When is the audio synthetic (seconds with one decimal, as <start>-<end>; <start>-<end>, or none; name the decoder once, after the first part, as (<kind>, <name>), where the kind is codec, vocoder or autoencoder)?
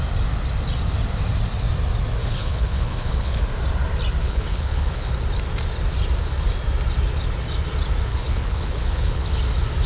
2.2-3.4 (codec, HILCodec); 4.2-5.1; 8.1-9.4